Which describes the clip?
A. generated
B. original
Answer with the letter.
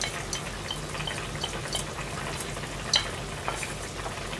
B